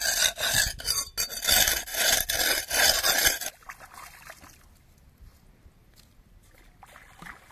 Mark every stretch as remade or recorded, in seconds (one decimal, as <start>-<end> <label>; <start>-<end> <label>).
0.0-1.9 recorded; 1.9-3.0 remade; 3.0-7.5 recorded

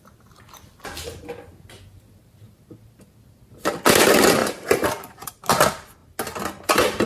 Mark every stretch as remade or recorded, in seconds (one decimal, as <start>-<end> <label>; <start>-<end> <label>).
0.0-4.4 recorded; 4.4-5.3 remade; 5.3-7.1 recorded

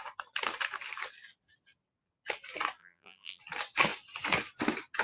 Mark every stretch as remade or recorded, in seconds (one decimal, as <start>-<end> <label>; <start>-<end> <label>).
0.0-2.8 recorded; 2.8-3.4 remade; 3.4-5.0 recorded

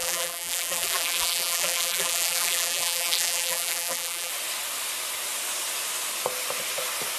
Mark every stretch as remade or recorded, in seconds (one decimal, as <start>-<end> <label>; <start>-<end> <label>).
0.0-4.3 remade; 4.3-7.2 recorded

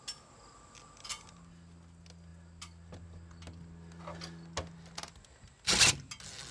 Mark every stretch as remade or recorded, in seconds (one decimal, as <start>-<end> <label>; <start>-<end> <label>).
0.0-6.5 recorded

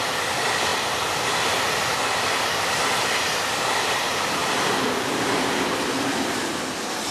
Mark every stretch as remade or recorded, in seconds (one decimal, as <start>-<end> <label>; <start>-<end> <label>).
0.0-4.4 recorded; 4.4-6.6 remade; 6.6-7.1 recorded

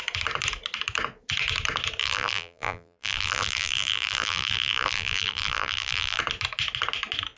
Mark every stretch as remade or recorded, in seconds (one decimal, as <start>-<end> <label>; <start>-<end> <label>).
0.0-2.0 recorded; 2.0-6.2 remade; 6.2-7.4 recorded